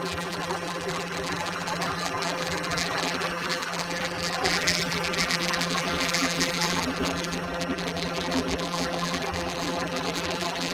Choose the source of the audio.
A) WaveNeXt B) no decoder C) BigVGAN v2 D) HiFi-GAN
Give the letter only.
C